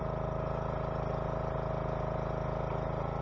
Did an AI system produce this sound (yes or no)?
no